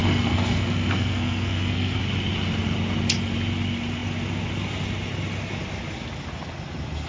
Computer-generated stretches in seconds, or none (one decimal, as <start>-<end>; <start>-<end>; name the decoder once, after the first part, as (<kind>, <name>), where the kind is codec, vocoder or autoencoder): 0.0-2.0 (codec, SNAC)